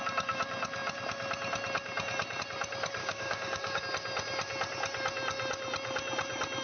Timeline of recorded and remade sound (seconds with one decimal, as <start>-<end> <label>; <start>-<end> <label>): 0.0-3.0 recorded; 3.0-3.8 remade; 3.8-6.6 recorded